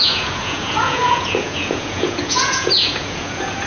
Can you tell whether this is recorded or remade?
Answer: remade